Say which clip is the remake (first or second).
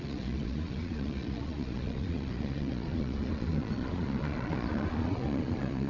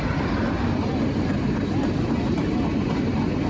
first